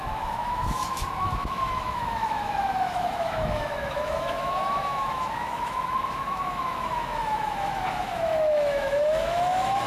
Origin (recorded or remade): remade